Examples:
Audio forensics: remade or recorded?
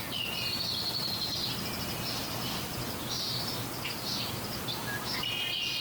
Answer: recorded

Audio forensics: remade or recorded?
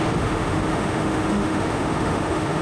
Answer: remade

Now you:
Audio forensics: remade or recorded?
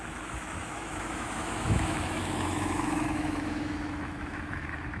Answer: remade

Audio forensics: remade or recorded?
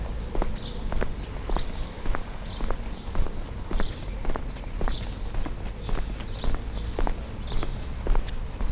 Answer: recorded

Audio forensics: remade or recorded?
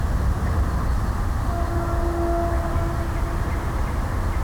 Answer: recorded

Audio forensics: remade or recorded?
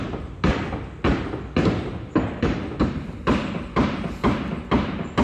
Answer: recorded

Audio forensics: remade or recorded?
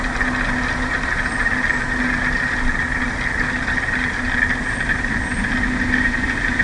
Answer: recorded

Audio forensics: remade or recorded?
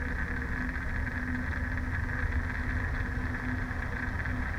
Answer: recorded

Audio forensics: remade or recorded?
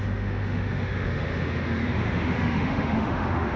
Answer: remade